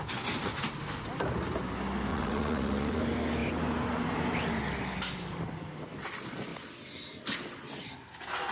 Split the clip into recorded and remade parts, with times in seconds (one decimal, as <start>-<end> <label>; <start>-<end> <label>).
0.0-2.1 recorded; 2.1-3.0 remade; 3.0-8.5 recorded